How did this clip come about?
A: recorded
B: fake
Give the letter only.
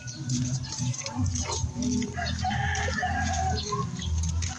B